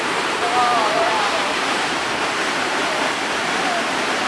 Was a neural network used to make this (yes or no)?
yes